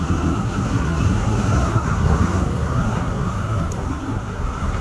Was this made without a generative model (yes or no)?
no